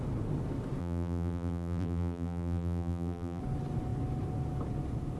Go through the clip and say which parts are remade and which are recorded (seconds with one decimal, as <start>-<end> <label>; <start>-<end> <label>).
0.0-0.8 recorded; 0.8-3.4 remade; 3.4-5.2 recorded